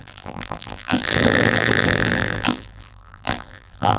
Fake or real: fake